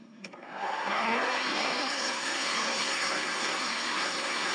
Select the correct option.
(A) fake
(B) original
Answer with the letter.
A